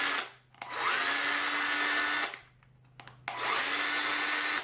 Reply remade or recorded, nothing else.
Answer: recorded